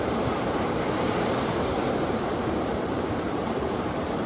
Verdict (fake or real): fake